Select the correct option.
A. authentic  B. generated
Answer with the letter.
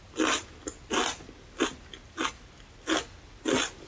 A